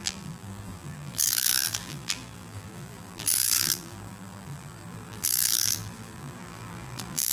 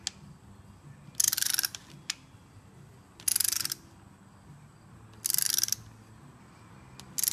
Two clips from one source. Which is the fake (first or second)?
first